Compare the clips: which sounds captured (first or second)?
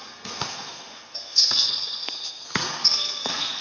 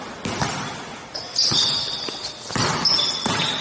second